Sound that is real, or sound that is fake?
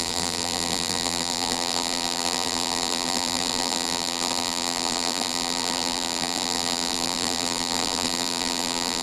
fake